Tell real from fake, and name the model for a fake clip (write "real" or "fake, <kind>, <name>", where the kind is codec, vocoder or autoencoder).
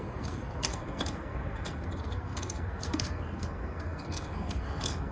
fake, codec, SNAC